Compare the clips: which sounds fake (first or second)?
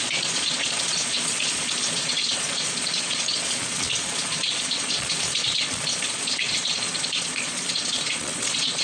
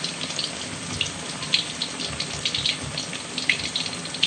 first